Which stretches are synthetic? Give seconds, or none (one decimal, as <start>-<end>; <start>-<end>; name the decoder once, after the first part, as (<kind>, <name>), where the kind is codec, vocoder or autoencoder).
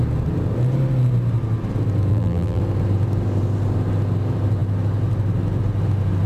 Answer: 2.1-2.6 (vocoder, BigVGAN v2)